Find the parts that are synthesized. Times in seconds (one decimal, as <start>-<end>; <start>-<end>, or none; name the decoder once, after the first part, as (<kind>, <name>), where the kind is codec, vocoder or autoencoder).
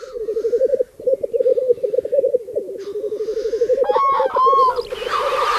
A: none